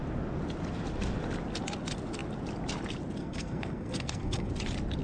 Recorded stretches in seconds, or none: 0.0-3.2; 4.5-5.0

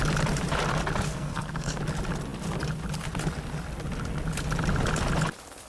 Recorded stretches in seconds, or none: 0.0-1.1; 1.8-5.7

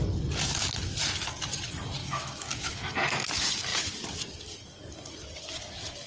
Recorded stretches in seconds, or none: 0.0-2.0; 2.9-6.1

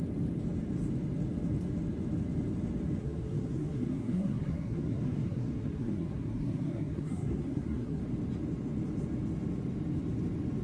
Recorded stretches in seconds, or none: 0.0-3.0; 8.0-10.6

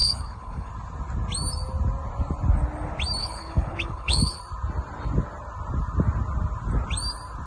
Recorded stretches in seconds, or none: 0.7-3.2; 4.4-7.5

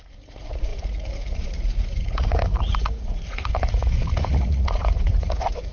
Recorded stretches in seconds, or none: none

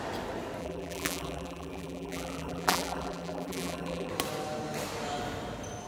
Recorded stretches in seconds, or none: 0.0-0.6; 4.1-5.9

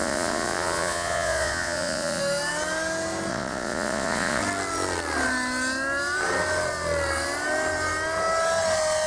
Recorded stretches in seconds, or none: 2.2-3.3; 4.4-9.1